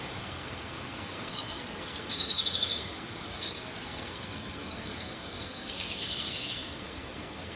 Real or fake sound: fake